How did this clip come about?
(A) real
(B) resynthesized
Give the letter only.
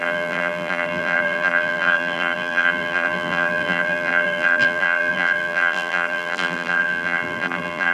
B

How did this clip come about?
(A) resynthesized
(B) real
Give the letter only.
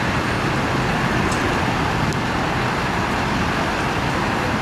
B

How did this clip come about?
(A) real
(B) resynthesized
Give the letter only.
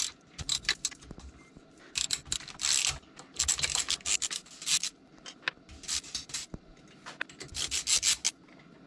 A